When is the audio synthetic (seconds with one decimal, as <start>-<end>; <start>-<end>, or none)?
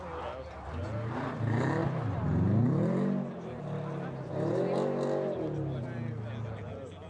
none